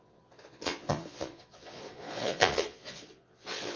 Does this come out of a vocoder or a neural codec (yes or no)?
yes